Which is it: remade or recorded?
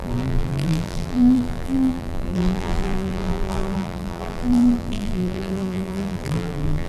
remade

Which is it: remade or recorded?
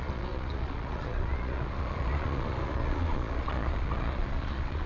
remade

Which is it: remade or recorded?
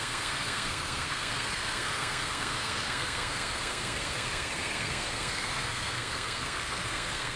remade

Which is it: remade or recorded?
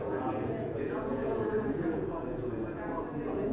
remade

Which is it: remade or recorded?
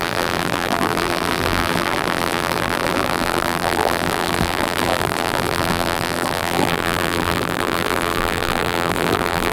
remade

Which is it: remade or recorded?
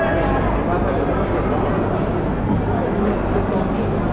recorded